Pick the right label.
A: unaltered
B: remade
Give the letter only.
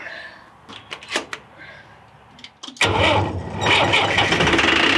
A